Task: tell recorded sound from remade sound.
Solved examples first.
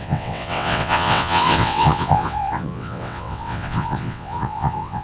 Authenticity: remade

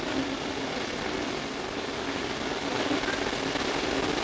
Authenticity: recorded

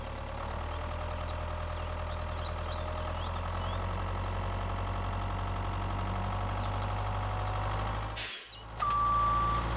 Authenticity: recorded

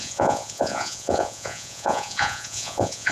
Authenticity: remade